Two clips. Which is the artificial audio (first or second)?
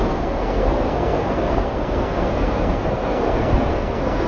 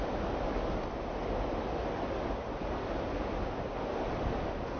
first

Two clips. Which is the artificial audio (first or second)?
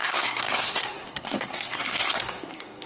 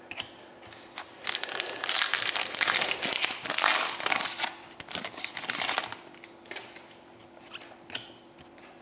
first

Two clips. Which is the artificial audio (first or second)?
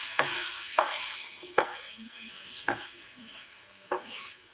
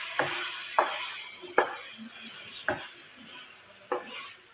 first